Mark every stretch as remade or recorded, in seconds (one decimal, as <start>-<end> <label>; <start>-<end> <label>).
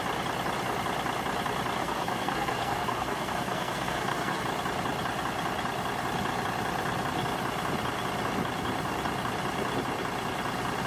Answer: 0.0-1.8 recorded; 1.8-4.4 remade; 4.4-10.9 recorded